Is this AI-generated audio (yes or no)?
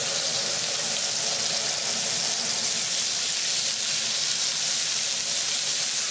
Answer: no